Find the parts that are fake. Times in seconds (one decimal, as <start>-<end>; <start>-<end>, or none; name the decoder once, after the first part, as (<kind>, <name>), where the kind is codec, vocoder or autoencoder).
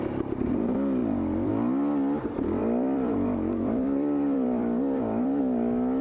1.0-1.5 (vocoder, BigVGAN v2); 2.6-5.4